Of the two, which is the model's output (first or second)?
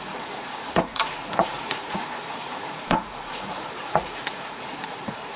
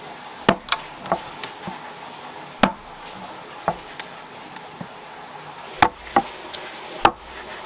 first